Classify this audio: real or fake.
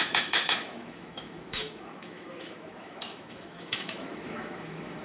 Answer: fake